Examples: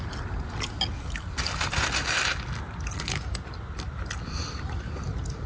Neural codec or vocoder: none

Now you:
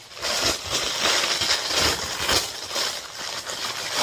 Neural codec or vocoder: none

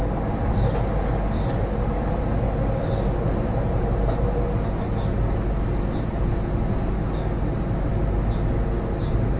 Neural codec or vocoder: none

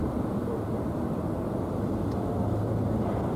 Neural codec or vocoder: vocoder, BigVGAN v2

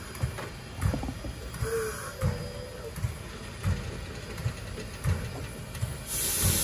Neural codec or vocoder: none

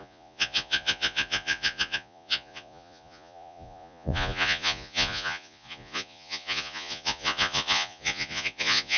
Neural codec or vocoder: vocoder, Vocos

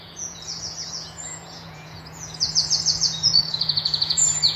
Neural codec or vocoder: vocoder, Vocos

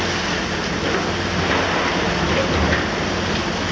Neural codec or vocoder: none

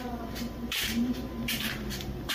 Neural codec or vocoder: vocoder, BigVGAN v2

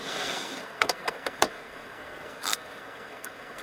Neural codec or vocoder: codec, SNAC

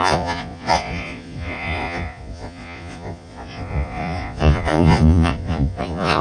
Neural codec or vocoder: vocoder, Vocos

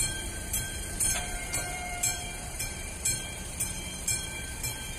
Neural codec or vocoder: vocoder, BigVGAN v2